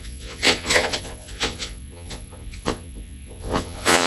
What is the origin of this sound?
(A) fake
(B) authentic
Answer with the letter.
A